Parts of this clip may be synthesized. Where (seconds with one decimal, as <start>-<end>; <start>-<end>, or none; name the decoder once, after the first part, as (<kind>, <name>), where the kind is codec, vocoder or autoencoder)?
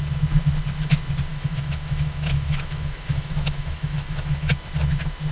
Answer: 1.3-4.5 (autoencoder, DAC-VAE)